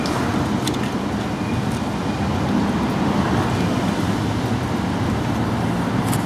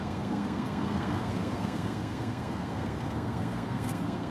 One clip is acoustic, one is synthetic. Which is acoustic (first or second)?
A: first